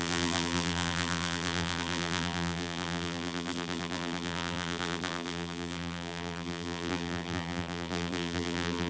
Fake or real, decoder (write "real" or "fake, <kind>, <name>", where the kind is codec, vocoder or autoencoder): fake, vocoder, BigVGAN v2